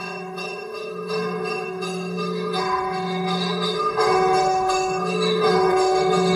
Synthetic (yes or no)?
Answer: yes